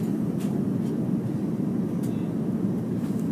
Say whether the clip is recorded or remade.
recorded